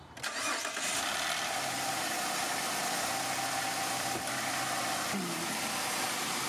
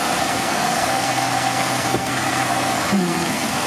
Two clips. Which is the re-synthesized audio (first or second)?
second